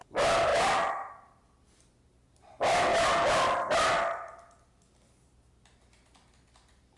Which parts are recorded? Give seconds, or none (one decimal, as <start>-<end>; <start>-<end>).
0.0-7.0